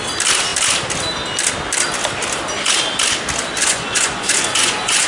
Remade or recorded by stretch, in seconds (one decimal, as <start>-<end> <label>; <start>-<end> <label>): 0.0-3.6 recorded; 3.6-5.1 remade